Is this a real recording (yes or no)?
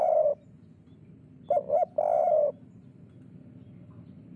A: yes